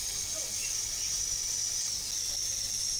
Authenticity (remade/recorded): recorded